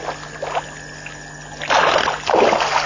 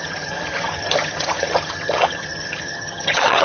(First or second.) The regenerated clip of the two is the second